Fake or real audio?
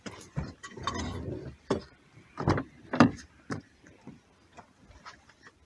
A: fake